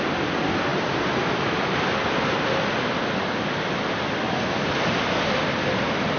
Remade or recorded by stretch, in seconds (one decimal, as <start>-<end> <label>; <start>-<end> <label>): 0.0-6.2 recorded